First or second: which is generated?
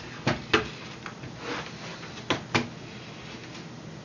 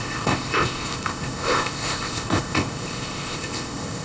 second